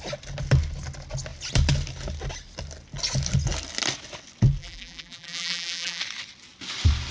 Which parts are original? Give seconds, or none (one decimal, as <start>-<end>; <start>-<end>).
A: 0.0-4.6; 6.0-7.1